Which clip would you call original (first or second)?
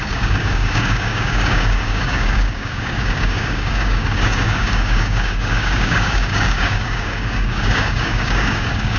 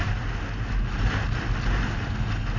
second